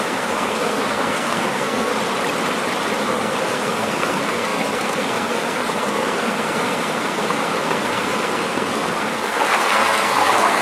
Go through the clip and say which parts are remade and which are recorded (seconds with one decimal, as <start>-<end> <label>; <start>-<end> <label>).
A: 0.0-1.9 remade; 1.9-3.0 recorded; 3.0-10.6 remade